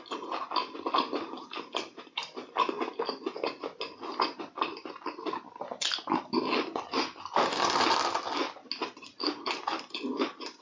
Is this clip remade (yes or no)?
no